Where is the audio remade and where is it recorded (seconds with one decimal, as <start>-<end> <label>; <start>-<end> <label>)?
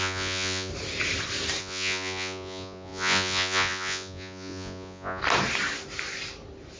0.0-0.7 remade; 0.7-1.6 recorded; 1.6-5.2 remade; 5.2-6.8 recorded